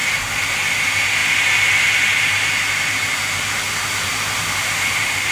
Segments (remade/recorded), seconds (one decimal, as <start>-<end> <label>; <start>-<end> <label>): 0.0-0.5 remade; 0.5-1.2 recorded; 1.2-1.7 remade; 1.7-2.1 recorded; 2.1-5.3 remade